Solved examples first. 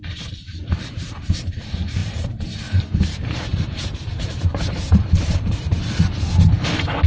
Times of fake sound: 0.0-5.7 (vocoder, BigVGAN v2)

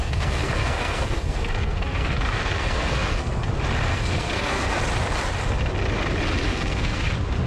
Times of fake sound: 0.0-3.5 (codec, SNAC); 3.9-4.8; 6.5-7.0

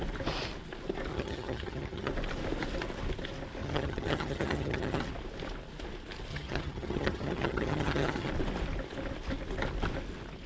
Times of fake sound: 1.1-2.1 (vocoder, HiFi-GAN); 3.6-5.0; 6.3-8.3

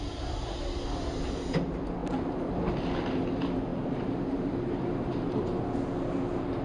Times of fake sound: 2.0-2.5 (vocoder, BigVGAN v2); 3.7-5.1

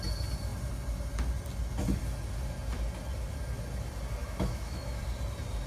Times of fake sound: 4.2-5.0 (autoencoder, DAC-VAE)